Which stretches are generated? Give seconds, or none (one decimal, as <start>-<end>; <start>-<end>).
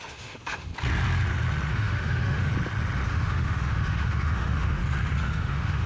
0.0-0.7; 1.7-2.5; 3.1-4.8; 5.3-5.9